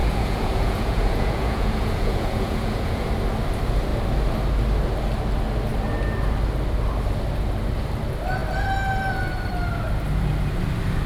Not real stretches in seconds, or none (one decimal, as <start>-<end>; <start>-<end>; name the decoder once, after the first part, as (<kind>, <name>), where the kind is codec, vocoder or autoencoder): 0.0-3.1 (vocoder, Vocos)